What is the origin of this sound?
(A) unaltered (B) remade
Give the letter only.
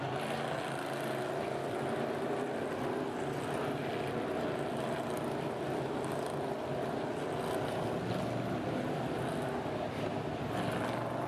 A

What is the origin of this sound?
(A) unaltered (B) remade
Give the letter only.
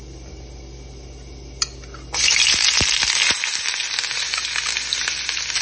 A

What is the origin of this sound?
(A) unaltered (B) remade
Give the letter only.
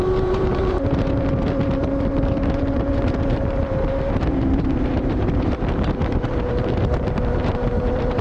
B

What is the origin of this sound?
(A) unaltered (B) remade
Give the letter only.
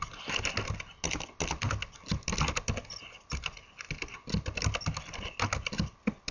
A